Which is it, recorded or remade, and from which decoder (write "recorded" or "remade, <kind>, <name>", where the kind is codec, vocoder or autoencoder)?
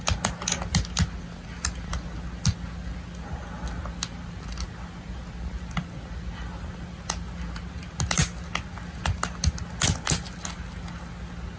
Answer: recorded